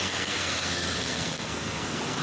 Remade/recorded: remade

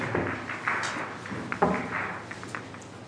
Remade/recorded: recorded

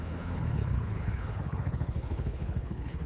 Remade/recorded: remade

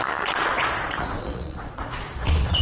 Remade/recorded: remade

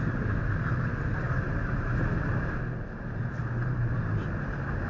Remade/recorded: recorded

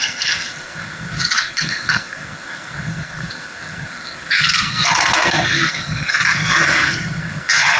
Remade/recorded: remade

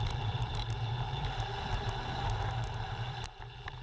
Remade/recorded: remade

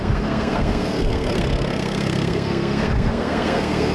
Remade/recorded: remade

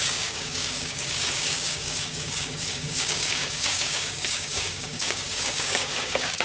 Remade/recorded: remade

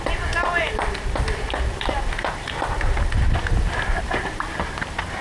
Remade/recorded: remade